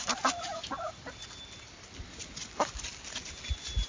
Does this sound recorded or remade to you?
recorded